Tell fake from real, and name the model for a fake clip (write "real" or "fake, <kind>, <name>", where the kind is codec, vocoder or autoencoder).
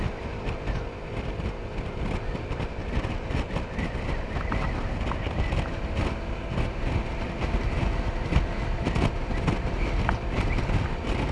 real